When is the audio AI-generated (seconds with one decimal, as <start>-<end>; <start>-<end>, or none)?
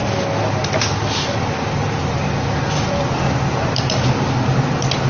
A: none